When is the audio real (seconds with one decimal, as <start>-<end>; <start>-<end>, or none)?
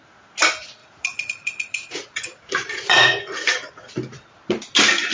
0.0-0.8; 3.9-5.1